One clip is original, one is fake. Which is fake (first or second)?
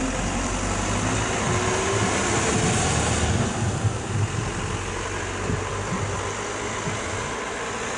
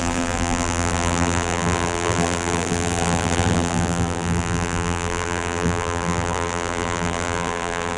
second